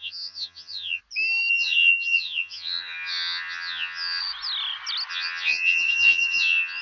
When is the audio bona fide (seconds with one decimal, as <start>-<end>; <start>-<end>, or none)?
1.0-1.5; 4.2-5.1